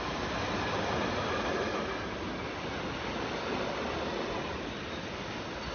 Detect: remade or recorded recorded